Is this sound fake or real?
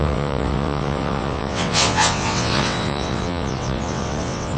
fake